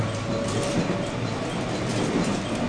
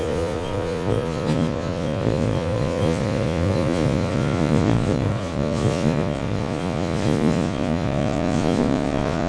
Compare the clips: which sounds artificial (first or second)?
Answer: second